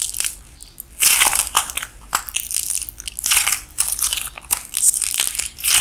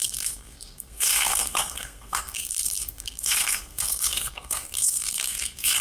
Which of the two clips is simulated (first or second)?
second